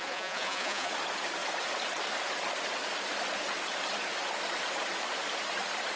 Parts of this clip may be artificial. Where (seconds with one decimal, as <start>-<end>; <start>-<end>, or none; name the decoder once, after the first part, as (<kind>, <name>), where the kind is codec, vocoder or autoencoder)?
0.0-0.9 (vocoder, Vocos)